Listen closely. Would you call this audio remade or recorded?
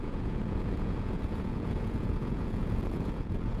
remade